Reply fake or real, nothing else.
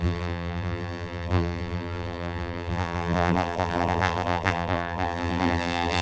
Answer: fake